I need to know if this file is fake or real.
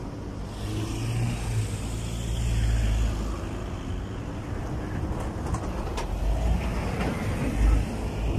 real